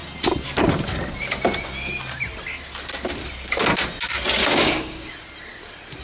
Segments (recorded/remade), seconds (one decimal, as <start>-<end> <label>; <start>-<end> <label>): 0.0-4.4 recorded; 4.4-5.1 remade; 5.1-6.0 recorded